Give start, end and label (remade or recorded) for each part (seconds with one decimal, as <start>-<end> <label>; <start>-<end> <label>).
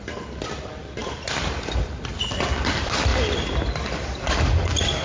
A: 0.0-5.0 recorded